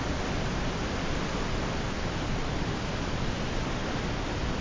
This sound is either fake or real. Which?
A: real